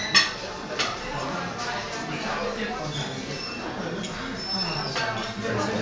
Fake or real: real